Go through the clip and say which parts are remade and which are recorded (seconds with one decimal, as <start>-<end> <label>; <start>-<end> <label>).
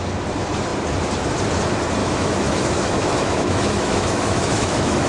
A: 0.0-2.0 recorded; 2.0-5.1 remade